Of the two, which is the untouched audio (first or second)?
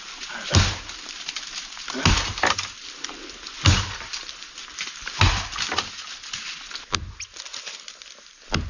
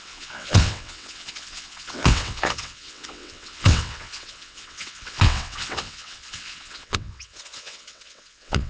first